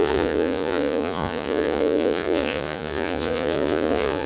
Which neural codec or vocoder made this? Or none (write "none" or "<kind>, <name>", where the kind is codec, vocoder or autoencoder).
vocoder, Vocos